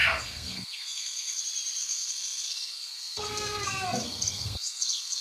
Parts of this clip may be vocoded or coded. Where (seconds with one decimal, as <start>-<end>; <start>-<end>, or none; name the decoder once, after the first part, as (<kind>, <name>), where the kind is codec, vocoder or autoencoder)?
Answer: 0.0-1.4 (codec, SNAC); 1.8-5.2